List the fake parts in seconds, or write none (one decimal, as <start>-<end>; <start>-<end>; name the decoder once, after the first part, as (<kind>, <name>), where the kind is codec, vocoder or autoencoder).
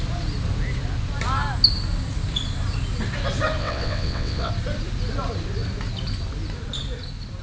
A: 3.6-4.5 (vocoder, WaveNeXt)